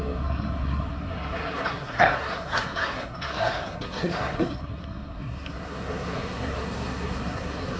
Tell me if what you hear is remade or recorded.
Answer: remade